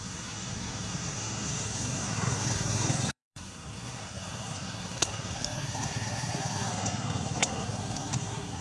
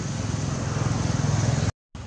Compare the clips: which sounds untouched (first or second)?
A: second